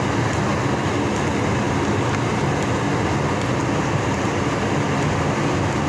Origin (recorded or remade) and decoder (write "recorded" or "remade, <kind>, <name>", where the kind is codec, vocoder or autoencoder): recorded